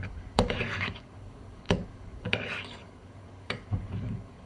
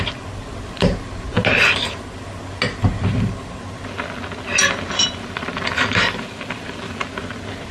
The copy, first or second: first